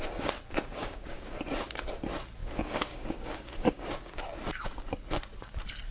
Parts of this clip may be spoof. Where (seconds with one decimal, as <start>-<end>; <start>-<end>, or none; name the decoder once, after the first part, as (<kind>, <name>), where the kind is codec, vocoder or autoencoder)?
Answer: 0.8-1.4 (codec, DAC); 2.4-4.2